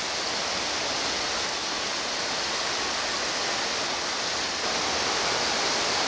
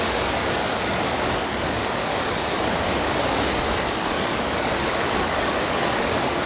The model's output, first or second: second